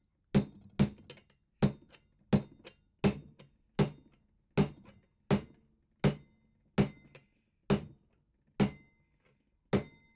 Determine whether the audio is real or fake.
real